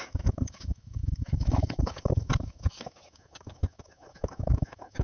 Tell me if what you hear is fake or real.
fake